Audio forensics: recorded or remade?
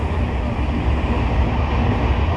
recorded